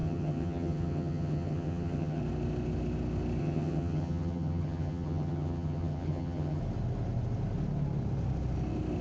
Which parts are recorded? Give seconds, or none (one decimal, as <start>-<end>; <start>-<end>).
2.2-3.4; 6.6-9.0